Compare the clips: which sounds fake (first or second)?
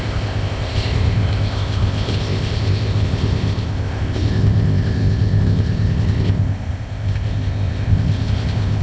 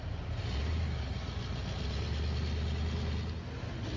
first